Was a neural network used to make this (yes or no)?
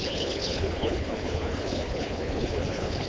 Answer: yes